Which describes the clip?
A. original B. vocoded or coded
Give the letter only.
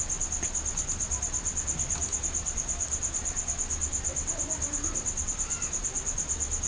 A